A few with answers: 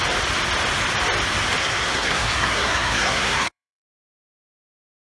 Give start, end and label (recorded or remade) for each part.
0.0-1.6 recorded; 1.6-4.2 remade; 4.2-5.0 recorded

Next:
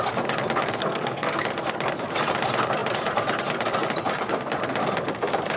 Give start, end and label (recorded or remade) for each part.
0.0-0.8 recorded; 0.8-1.4 remade; 1.4-5.6 recorded

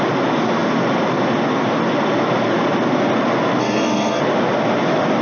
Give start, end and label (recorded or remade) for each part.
0.0-3.6 recorded; 3.6-4.2 remade; 4.2-5.2 recorded